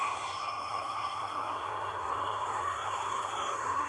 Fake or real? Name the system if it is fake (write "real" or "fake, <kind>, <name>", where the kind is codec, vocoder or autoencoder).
fake, codec, SNAC